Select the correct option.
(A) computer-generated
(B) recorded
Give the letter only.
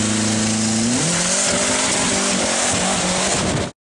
B